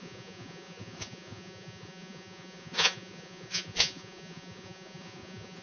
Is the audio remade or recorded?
remade